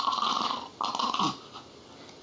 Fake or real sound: real